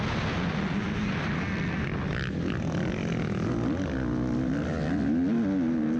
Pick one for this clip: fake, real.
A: real